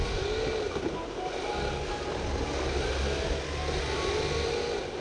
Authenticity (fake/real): real